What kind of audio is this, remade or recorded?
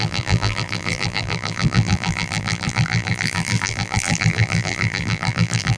remade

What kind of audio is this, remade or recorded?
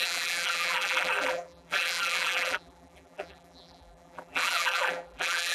remade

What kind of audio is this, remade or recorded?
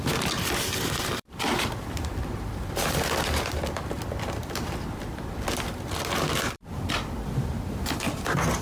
remade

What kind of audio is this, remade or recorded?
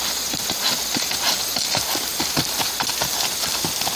recorded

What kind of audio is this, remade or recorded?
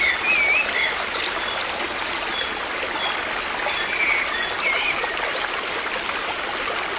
recorded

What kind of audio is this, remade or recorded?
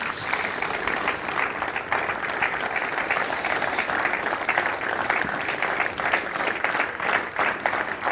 recorded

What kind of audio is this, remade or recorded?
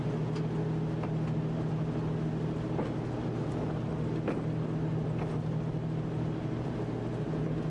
recorded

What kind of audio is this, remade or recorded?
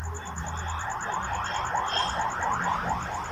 recorded